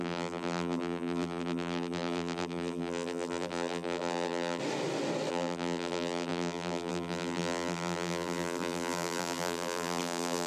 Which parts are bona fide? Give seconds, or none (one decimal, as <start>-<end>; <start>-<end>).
4.6-5.3